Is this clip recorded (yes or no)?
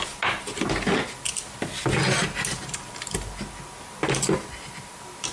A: yes